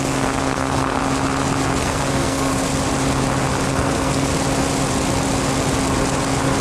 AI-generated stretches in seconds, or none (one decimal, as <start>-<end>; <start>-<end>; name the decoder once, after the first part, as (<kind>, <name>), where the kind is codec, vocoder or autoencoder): 0.0-1.0 (codec, SNAC); 1.8-2.5; 3.7-4.3